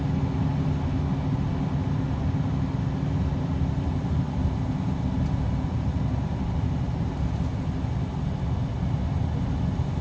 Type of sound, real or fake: real